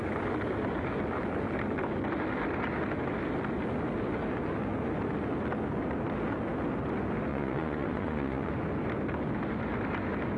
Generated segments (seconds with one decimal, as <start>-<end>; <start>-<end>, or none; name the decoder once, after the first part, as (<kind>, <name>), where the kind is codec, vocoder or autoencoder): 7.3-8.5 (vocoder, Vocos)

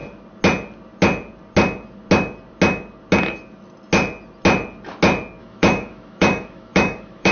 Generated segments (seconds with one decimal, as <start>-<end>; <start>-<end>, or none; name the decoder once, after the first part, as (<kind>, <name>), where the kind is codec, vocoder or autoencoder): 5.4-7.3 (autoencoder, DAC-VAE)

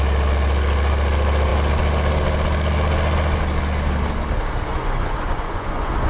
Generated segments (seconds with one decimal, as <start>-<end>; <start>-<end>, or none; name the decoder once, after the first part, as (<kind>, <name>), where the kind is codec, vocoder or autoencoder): 4.7-6.1 (vocoder, Vocos)